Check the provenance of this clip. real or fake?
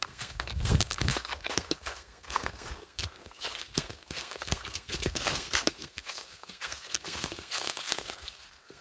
fake